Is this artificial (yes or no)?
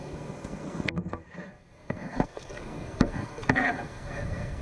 yes